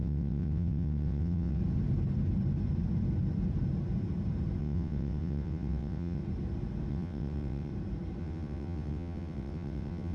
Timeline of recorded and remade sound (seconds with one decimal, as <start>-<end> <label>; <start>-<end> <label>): 0.0-1.6 remade; 1.6-4.6 recorded; 4.6-6.2 remade; 6.2-6.9 recorded; 6.9-7.7 remade; 7.7-8.2 recorded; 8.2-10.1 remade